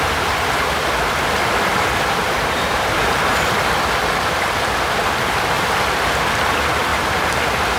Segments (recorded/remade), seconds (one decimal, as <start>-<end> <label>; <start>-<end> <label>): 0.0-2.2 recorded; 2.2-3.0 remade; 3.0-7.8 recorded